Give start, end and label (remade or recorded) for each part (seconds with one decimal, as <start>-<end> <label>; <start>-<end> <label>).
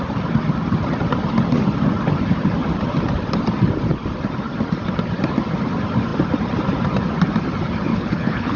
0.0-7.9 recorded; 7.9-8.6 remade